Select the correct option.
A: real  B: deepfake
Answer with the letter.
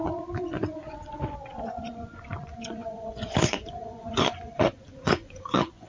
B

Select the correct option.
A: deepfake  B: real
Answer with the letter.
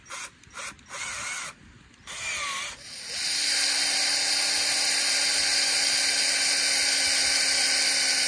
B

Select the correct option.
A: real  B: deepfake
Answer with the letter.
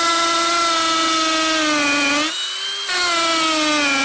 A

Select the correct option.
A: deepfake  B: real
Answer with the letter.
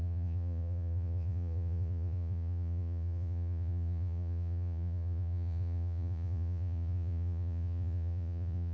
A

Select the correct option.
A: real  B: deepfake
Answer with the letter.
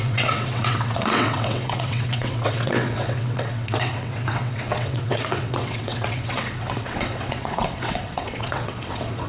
B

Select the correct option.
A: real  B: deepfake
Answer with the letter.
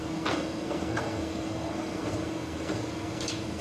B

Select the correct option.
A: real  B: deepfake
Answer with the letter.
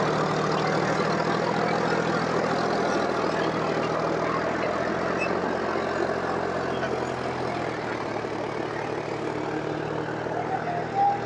A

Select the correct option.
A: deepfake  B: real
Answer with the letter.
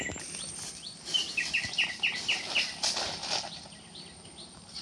B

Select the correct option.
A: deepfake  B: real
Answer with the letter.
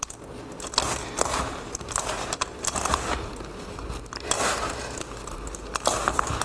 B